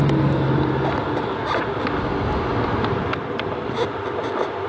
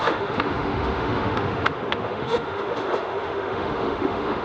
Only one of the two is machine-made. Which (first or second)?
second